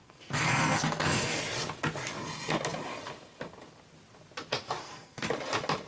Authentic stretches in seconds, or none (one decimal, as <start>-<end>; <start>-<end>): 1.4-4.8; 5.3-5.9